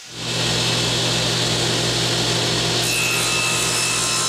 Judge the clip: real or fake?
real